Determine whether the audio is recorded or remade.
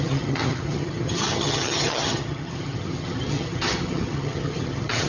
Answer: remade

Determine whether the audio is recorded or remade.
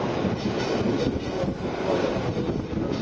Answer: recorded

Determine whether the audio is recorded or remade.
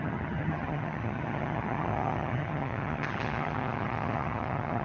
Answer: remade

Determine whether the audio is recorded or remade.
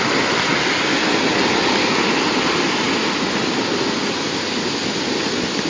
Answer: recorded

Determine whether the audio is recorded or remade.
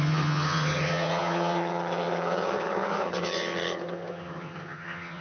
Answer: remade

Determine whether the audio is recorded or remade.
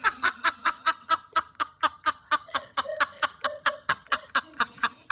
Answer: remade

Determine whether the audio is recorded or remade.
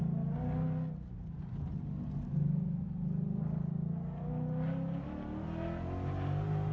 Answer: recorded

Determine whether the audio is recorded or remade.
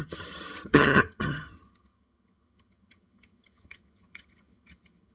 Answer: remade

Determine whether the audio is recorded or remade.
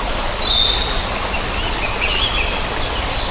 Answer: recorded